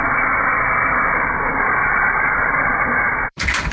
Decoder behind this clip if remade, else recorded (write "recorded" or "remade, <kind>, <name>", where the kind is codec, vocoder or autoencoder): remade, vocoder, BigVGAN v2